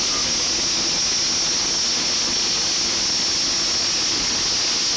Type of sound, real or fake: real